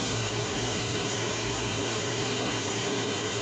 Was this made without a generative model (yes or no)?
no